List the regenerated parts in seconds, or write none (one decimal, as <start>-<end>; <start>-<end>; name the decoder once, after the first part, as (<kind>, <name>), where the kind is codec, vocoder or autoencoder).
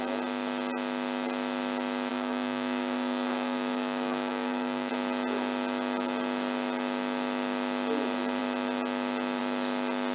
2.1-4.9 (codec, DAC)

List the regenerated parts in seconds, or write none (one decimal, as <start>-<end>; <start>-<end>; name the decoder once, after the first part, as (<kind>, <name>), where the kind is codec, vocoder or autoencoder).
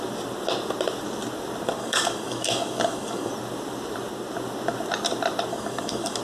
1.8-3.3 (codec, DAC); 5.5-6.2